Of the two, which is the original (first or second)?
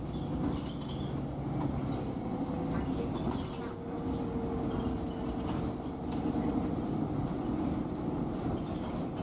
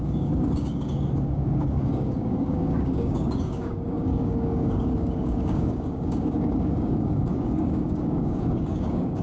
first